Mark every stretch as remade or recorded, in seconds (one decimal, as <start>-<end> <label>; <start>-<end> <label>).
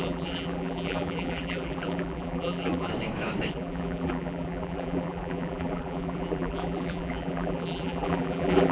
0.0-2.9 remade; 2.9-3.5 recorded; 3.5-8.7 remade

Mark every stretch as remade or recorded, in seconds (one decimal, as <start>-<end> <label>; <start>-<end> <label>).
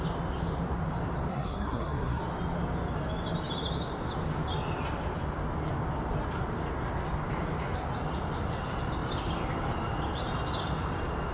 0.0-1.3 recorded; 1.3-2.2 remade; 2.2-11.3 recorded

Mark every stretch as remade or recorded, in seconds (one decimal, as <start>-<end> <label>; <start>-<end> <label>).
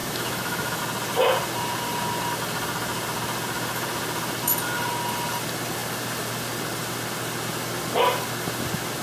0.0-0.8 remade; 0.8-9.0 recorded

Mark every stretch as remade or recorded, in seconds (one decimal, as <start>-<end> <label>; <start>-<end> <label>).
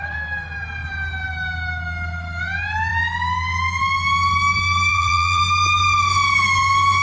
0.0-4.9 recorded; 4.9-5.4 remade; 5.4-7.0 recorded